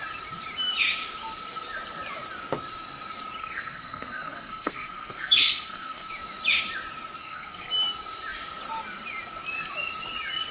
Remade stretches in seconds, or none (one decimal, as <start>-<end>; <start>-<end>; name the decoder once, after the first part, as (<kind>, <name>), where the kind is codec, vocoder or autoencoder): 3.4-6.1 (codec, SNAC); 7.2-7.7

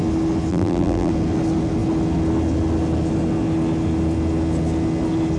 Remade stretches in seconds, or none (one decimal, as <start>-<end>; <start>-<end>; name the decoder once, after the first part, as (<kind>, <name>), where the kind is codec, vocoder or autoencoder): 0.5-1.1 (vocoder, BigVGAN v2)

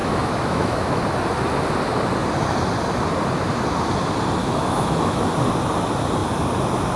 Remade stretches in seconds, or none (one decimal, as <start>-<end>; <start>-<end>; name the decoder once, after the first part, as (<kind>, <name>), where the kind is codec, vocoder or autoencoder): 0.0-1.0 (autoencoder, DAC-VAE); 4.4-5.2

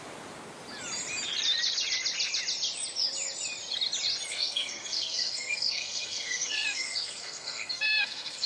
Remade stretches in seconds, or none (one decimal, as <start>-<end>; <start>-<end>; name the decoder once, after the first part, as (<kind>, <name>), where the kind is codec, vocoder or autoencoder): 4.3-8.5 (codec, SNAC)